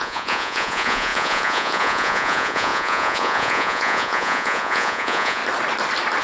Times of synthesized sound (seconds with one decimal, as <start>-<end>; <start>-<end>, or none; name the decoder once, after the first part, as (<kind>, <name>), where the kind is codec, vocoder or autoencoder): 0.0-5.4 (vocoder, Vocos)